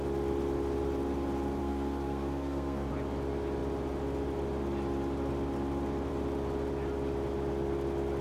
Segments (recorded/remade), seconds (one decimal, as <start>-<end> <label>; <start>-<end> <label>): 0.0-1.6 recorded; 1.6-2.9 remade; 2.9-8.2 recorded